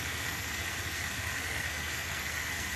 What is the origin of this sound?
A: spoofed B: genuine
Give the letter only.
A